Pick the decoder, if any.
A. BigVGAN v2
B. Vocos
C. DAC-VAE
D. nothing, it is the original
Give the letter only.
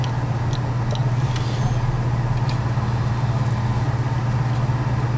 D